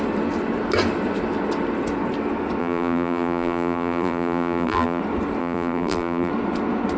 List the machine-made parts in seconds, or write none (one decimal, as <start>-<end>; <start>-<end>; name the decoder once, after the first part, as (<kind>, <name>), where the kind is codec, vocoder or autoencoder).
2.6-5.0 (vocoder, BigVGAN v2); 5.4-6.3